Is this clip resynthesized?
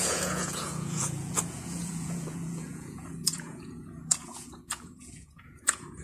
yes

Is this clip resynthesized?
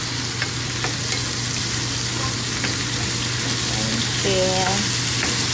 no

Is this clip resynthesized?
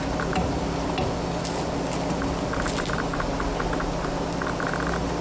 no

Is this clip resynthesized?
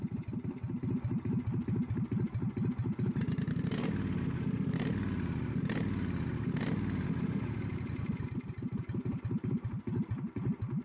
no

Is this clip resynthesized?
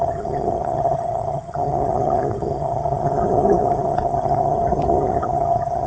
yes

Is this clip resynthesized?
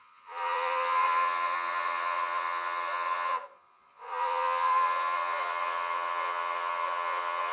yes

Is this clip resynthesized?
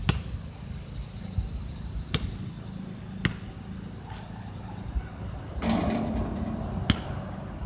no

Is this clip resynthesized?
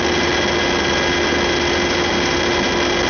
no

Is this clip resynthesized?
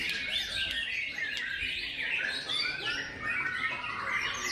no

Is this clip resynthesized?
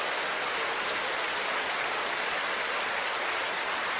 no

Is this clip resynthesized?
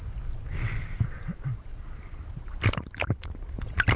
no